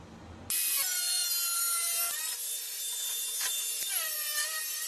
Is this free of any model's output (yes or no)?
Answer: yes